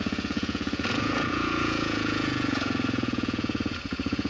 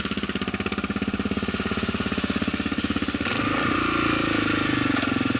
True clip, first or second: second